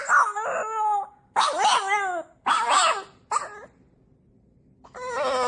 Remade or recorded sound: recorded